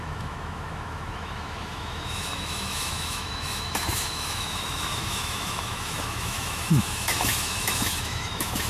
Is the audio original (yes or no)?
no